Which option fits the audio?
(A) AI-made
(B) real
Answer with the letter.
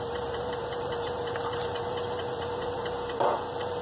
A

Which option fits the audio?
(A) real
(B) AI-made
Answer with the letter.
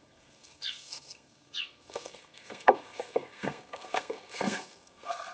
B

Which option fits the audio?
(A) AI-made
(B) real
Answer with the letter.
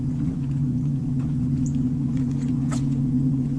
A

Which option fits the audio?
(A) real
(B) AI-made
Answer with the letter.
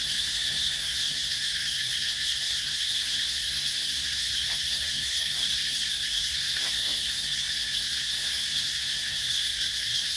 B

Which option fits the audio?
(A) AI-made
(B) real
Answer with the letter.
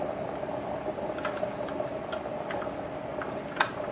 B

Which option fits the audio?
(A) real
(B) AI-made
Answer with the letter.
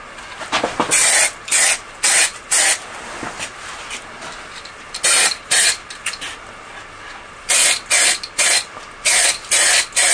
A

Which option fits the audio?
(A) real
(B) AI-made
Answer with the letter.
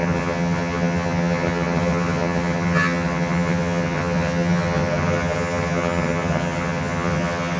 B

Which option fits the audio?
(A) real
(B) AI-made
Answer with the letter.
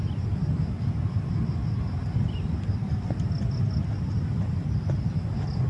A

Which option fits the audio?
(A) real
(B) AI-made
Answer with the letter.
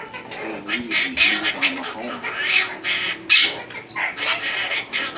A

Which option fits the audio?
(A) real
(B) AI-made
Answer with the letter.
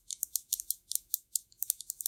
B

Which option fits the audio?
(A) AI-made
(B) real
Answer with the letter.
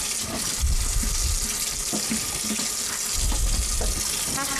B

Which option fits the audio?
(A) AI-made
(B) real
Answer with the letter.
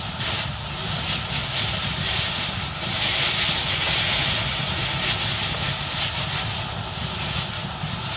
B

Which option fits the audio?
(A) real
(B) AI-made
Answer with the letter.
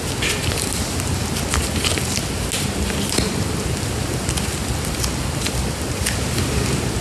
A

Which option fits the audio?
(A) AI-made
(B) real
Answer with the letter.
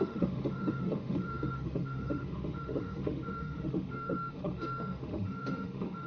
A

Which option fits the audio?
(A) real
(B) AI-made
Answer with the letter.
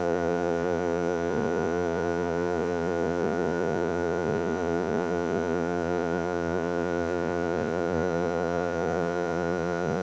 B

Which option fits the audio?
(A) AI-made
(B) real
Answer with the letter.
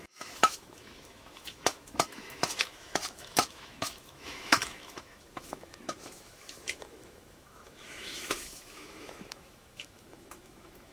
A